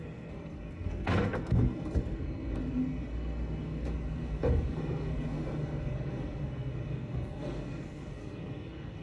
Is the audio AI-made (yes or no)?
yes